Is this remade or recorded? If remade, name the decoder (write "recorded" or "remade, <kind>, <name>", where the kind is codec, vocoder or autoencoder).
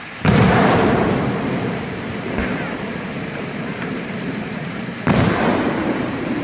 remade, vocoder, BigVGAN v2